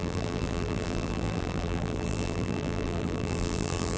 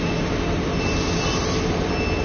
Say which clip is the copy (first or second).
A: first